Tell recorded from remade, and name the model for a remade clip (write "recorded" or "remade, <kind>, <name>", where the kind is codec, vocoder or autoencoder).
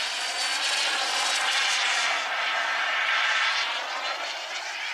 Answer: recorded